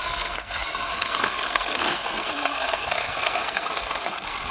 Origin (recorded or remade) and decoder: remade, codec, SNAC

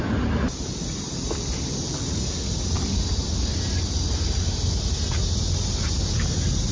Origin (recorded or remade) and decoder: recorded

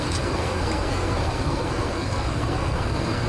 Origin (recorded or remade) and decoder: remade, codec, SNAC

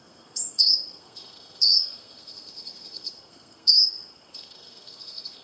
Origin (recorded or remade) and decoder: remade, codec, SNAC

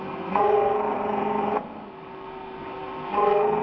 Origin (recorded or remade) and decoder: remade, codec, SNAC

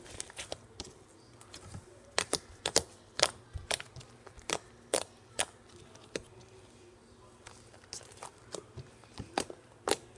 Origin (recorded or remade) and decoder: recorded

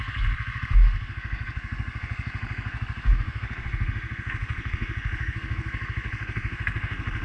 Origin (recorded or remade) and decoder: remade, codec, SNAC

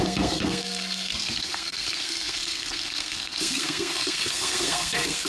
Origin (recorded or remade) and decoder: remade, codec, SNAC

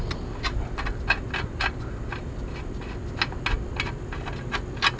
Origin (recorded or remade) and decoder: recorded